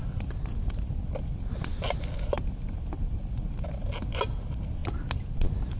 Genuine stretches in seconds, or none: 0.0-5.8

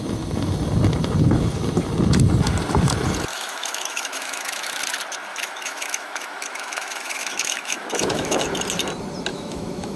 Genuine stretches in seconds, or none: 0.0-3.3; 4.8-5.3; 8.4-9.3